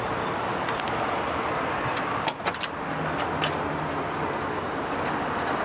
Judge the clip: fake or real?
real